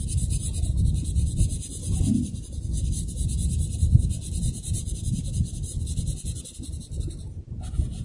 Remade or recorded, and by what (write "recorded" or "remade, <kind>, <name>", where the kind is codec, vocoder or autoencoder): recorded